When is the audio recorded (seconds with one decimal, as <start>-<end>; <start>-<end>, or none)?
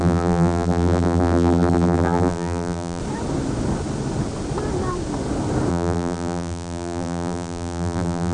3.0-5.7